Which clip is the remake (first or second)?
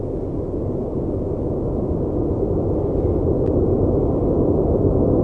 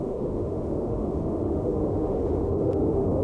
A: second